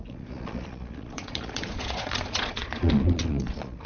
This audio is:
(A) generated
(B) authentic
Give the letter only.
A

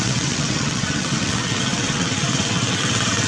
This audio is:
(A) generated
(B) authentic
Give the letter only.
A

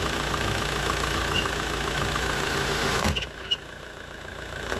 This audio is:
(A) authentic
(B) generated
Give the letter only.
B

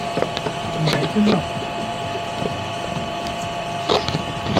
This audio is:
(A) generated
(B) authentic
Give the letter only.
A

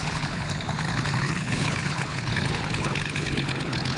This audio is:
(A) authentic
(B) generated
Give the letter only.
B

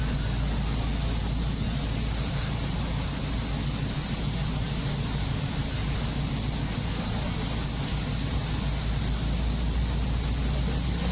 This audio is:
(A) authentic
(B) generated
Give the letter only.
A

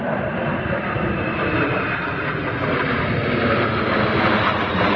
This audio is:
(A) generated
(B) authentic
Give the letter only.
B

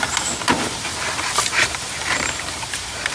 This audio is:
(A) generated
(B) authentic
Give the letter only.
A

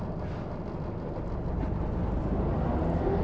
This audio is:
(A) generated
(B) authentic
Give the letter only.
B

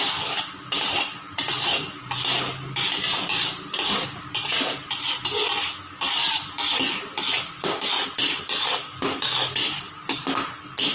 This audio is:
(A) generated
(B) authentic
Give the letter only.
B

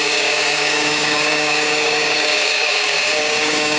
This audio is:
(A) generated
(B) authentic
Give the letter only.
A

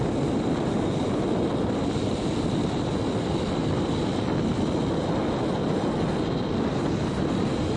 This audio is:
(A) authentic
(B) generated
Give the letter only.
A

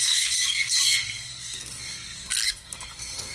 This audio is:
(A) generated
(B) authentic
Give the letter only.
A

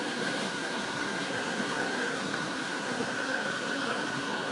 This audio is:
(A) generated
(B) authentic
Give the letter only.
A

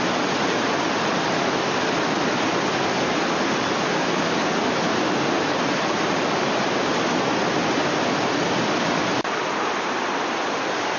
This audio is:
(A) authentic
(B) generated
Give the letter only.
A